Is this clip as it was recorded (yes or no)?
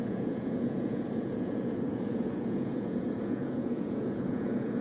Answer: no